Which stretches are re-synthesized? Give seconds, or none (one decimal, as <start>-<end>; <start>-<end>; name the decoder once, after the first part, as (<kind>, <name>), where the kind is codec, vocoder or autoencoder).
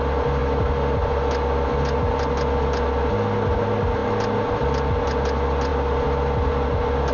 none